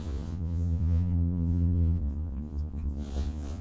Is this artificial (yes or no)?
yes